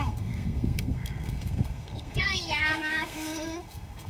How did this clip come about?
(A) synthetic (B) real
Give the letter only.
A